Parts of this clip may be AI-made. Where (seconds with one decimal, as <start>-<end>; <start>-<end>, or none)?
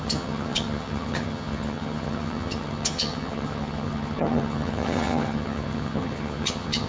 0.0-6.9